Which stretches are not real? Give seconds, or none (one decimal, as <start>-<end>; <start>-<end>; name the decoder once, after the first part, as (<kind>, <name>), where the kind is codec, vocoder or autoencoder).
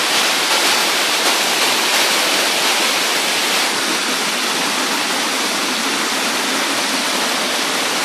0.8-1.3 (vocoder, BigVGAN v2)